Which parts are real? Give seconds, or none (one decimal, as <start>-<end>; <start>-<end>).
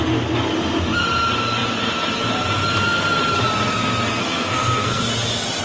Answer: 0.0-4.2; 5.0-5.6